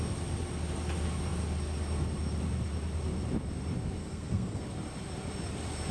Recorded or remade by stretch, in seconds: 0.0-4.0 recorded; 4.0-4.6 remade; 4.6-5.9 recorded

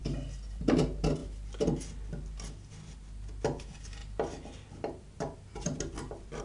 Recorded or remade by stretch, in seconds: 0.0-6.4 recorded

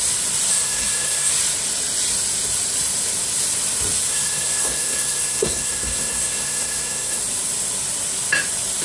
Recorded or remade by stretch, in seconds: 0.0-0.5 recorded; 0.5-1.3 remade; 1.3-4.1 recorded; 4.1-7.2 remade; 7.2-8.8 recorded